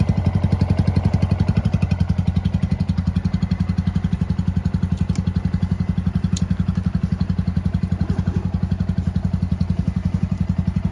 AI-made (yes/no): no